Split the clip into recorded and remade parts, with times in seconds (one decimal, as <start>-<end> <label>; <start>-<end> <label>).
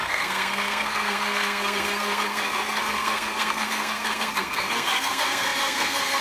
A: 0.0-6.2 remade